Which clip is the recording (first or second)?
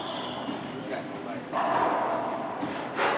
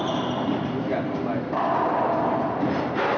second